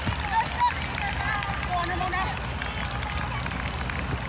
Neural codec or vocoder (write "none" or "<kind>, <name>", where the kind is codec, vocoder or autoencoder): none